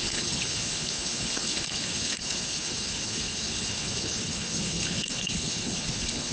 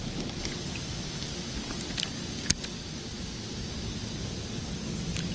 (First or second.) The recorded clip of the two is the second